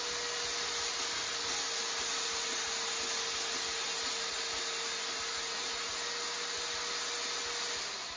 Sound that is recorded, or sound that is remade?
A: recorded